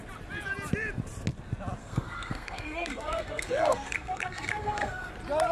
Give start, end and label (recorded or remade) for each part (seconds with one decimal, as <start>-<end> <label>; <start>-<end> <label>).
0.0-1.8 recorded; 1.8-5.1 remade; 5.1-5.5 recorded